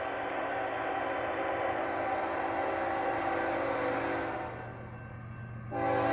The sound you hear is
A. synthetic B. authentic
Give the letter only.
B